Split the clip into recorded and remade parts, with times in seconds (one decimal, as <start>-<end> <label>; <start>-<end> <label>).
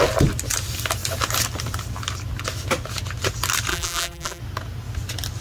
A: 0.0-3.7 recorded; 3.7-4.4 remade; 4.4-5.4 recorded